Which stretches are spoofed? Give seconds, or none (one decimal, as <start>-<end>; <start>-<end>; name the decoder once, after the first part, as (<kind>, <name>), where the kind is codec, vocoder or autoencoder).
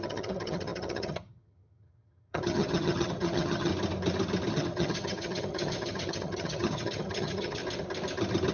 0.0-3.7 (vocoder, HiFi-GAN); 4.5-7.6